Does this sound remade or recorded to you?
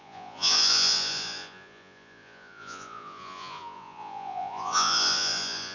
remade